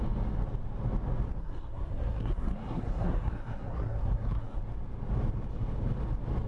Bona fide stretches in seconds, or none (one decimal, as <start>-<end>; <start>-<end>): 0.0-1.4; 4.6-6.5